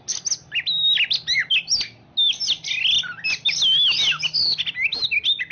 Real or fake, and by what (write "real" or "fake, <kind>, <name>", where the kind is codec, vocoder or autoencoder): real